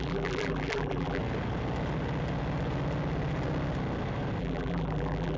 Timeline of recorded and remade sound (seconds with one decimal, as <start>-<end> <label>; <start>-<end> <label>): 0.0-1.2 remade; 1.2-4.4 recorded; 4.4-5.4 remade